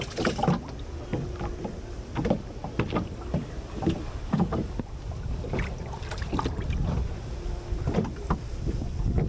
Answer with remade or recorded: recorded